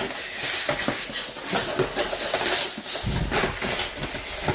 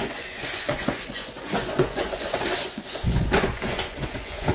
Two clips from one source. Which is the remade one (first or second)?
second